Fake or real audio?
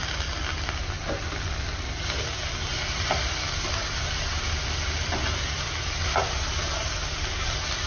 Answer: real